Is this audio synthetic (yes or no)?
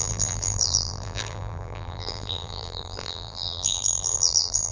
yes